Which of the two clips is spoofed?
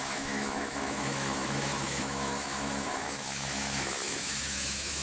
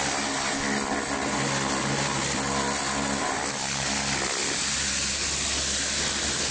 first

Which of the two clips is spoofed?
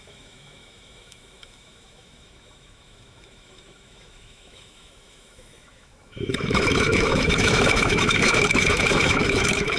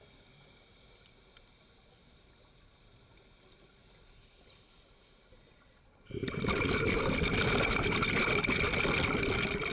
first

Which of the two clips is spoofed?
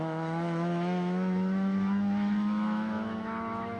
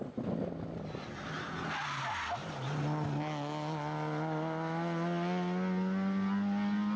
first